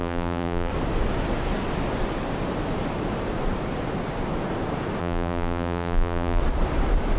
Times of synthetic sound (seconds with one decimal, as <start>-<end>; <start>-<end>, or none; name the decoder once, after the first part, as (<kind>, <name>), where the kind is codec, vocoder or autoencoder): 0.0-0.7 (vocoder, BigVGAN v2); 5.0-6.4